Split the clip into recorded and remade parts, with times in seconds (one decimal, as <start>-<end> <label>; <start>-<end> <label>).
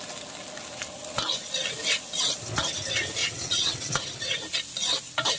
0.0-3.2 recorded; 3.2-4.0 remade; 4.0-5.4 recorded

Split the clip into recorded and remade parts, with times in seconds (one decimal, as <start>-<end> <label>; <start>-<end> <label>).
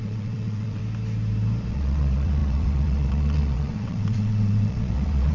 0.0-0.8 remade; 0.8-1.7 recorded; 1.7-5.3 remade